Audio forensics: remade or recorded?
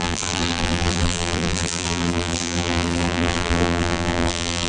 remade